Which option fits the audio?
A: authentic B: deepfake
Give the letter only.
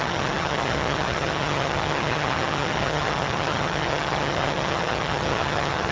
B